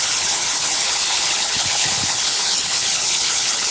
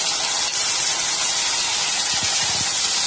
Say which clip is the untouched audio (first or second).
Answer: second